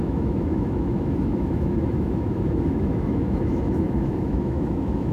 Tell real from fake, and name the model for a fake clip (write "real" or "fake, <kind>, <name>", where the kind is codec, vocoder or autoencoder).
fake, autoencoder, DAC-VAE